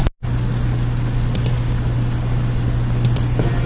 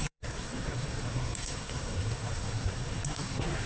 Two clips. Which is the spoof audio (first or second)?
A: second